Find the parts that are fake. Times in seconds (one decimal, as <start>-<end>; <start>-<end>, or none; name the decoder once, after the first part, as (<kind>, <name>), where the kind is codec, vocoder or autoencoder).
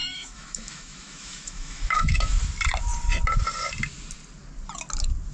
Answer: 0.0-2.3 (autoencoder, DAC-VAE)